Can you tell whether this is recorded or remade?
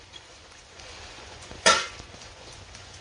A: remade